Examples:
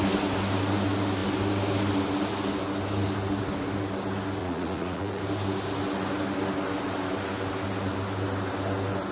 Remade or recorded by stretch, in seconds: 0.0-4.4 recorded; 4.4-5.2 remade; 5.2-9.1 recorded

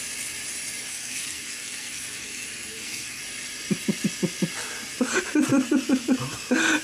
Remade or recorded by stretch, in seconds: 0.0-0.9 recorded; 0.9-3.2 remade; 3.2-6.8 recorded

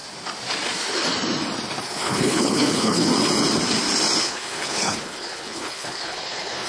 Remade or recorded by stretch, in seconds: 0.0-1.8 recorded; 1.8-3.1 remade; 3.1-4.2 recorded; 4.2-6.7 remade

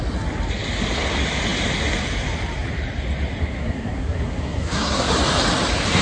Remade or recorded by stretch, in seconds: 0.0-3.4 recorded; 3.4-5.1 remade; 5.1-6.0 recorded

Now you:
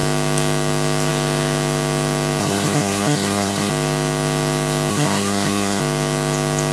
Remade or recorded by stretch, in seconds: 0.0-2.4 recorded; 2.4-3.7 remade; 3.7-4.9 recorded; 4.9-5.8 remade; 5.8-6.7 recorded

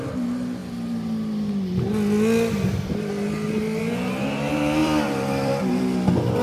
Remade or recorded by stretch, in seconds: 0.0-4.8 recorded; 4.8-5.7 remade; 5.7-6.4 recorded